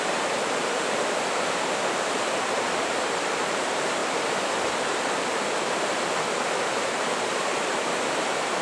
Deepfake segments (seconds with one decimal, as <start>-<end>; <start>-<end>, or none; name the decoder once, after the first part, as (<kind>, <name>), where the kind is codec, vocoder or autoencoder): 0.0-4.0 (vocoder, BigVGAN v2); 6.6-8.6